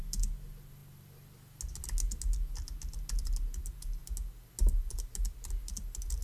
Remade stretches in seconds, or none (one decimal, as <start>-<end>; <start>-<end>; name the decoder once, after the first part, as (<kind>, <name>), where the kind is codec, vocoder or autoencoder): none